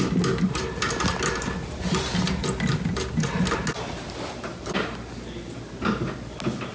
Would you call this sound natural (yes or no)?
yes